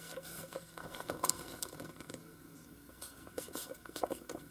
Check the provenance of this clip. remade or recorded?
remade